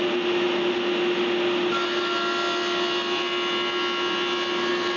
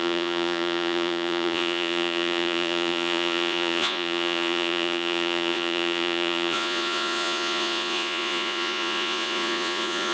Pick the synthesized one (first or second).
second